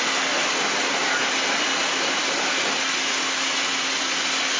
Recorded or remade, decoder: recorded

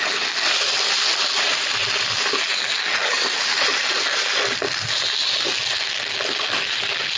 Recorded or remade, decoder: recorded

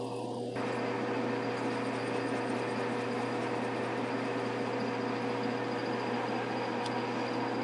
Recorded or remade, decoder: recorded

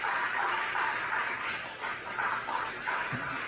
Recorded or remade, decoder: recorded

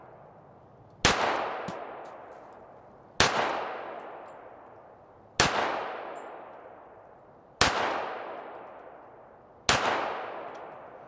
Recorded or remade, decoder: recorded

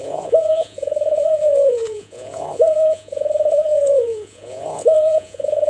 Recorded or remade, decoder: remade, vocoder, Vocos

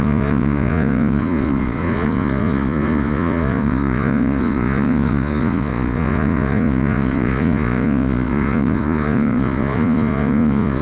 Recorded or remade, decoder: remade, vocoder, Vocos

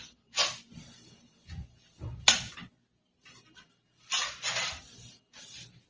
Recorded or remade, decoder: recorded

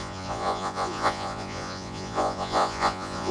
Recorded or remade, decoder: remade, vocoder, Vocos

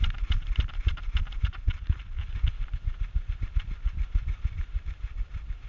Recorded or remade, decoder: recorded